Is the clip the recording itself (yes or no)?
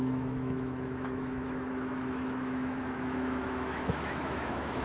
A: no